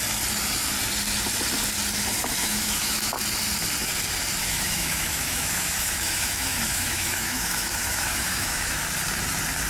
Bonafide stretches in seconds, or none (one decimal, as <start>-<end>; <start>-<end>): 0.0-2.4; 3.1-4.4; 8.8-9.7